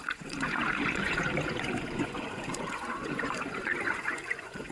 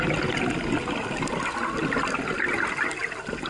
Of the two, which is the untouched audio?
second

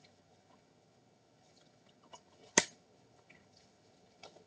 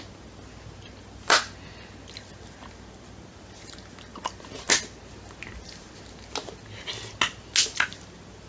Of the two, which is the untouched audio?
second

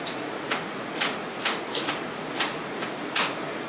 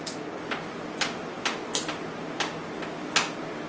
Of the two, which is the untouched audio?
second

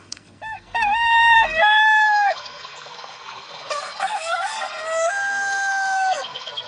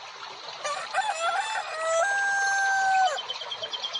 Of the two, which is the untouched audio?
second